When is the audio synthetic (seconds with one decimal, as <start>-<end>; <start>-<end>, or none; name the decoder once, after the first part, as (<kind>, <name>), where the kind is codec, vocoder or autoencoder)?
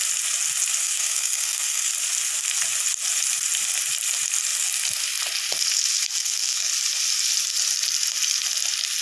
0.8-1.9 (codec, SNAC); 6.2-6.7